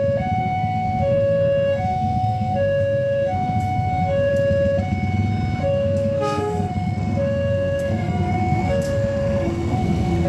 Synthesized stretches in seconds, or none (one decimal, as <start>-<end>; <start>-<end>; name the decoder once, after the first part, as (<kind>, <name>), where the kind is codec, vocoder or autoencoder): 0.4-4.3 (codec, SNAC); 5.6-10.3